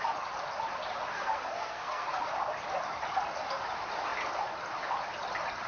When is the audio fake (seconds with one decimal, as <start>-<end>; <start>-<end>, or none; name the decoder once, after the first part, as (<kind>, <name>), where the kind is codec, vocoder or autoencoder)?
1.1-2.1 (codec, SNAC)